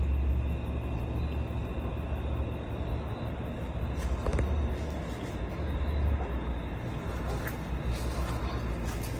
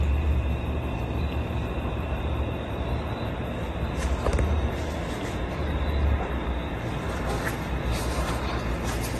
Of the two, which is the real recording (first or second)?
first